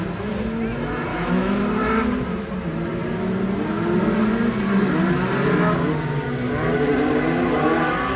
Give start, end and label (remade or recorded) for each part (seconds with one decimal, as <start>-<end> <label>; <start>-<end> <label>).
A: 0.0-1.1 recorded; 1.1-1.6 remade; 1.6-8.2 recorded